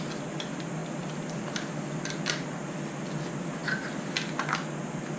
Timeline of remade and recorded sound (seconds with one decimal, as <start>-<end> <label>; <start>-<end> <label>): 0.0-5.2 recorded